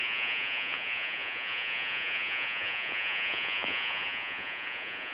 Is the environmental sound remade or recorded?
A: remade